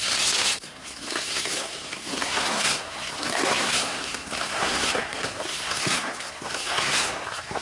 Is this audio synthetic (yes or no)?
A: yes